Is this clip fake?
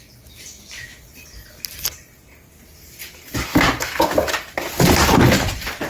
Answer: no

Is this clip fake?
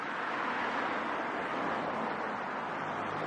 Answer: yes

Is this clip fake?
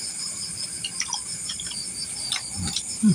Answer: yes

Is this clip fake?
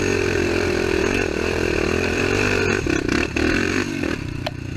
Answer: yes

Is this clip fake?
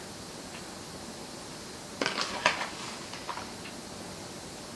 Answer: no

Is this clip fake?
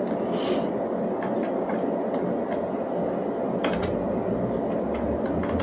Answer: no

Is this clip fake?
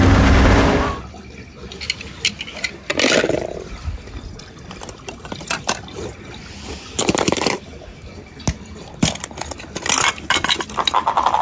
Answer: no